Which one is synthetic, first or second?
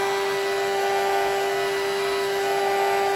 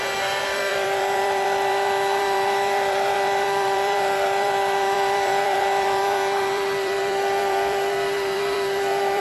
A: second